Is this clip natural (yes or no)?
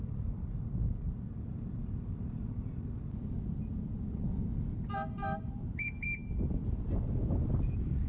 yes